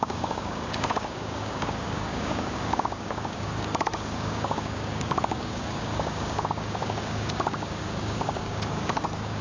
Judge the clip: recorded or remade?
remade